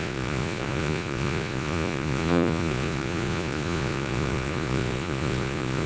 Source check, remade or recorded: remade